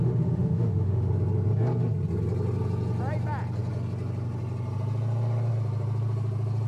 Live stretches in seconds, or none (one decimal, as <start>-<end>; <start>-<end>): 1.1-6.7